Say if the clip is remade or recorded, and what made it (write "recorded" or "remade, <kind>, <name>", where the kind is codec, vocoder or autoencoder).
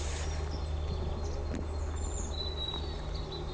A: recorded